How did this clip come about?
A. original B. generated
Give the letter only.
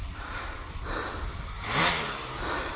B